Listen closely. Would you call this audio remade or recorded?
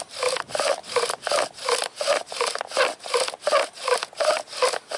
recorded